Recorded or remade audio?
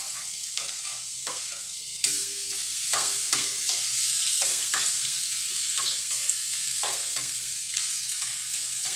remade